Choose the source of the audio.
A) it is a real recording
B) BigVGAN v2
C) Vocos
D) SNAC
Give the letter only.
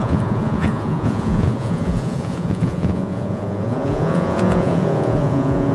C